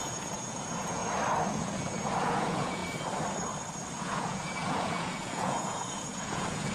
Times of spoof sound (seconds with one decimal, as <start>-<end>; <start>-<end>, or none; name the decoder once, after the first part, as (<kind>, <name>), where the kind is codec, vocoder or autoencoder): 0.0-1.0 (vocoder, Vocos); 1.5-2.8; 4.0-6.7